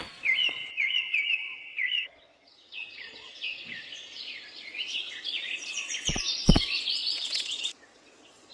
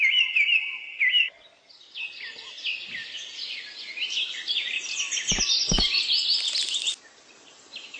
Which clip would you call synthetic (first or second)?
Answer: first